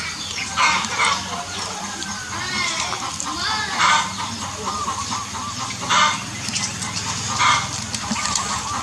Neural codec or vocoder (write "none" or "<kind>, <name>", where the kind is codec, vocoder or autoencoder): vocoder, BigVGAN v2